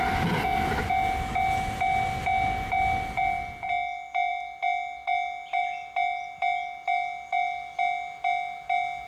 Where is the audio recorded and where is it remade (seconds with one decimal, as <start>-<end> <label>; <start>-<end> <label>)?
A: 0.0-9.1 recorded

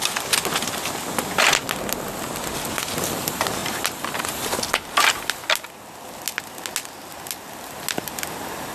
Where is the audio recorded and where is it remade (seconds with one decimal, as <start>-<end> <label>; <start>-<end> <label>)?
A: 0.0-8.7 recorded

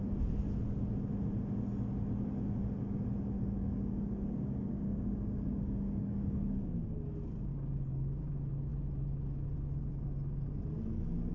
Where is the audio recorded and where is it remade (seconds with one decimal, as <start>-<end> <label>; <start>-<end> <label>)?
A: 0.0-3.6 recorded; 3.6-6.6 remade; 6.6-7.5 recorded; 7.5-8.2 remade; 8.2-11.3 recorded